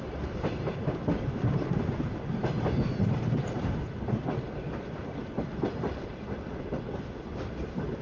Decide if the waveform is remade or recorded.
remade